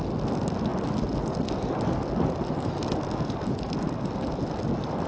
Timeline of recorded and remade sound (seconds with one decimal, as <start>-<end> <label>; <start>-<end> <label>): 0.0-5.1 recorded